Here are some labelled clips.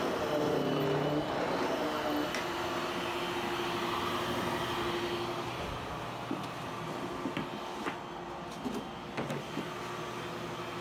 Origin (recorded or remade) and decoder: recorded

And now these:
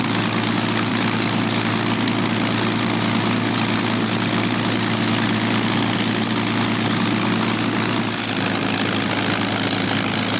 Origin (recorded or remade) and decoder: recorded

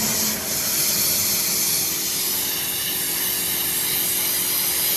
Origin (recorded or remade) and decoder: recorded